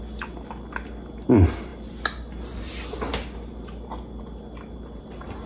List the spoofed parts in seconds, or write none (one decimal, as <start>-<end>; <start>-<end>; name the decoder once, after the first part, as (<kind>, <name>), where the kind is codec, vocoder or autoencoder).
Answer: none